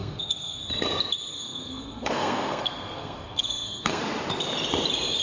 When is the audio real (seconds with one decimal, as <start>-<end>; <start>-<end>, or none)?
0.6-1.3; 4.0-5.2